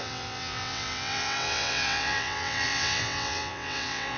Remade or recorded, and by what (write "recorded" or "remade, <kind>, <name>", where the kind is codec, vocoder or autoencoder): remade, vocoder, WaveNeXt